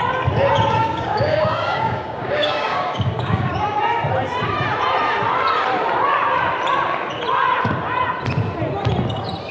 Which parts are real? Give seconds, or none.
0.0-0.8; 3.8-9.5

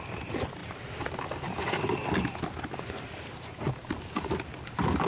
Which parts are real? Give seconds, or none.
0.0-5.1

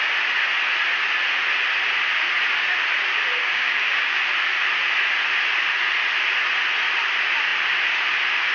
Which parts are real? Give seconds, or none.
0.0-3.4; 4.2-8.5

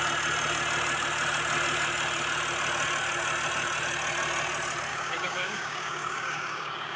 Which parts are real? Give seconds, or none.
0.0-4.9

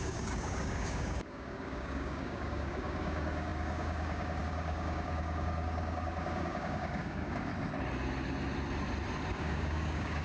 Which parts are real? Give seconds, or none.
7.5-9.3

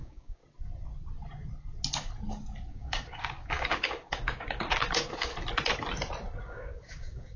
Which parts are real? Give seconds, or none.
0.4-2.7; 5.3-6.4

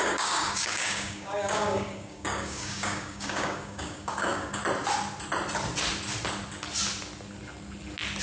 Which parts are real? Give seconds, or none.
4.6-8.2